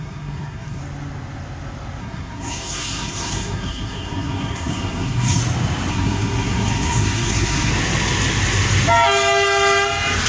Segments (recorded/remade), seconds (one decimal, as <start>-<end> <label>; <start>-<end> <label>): 0.0-0.8 remade; 0.8-2.0 recorded; 2.0-5.4 remade; 5.4-5.9 recorded; 5.9-7.7 remade; 7.7-10.3 recorded